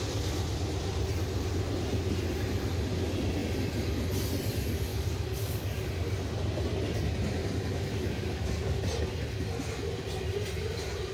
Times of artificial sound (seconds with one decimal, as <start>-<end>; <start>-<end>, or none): 4.9-5.9; 7.4-8.8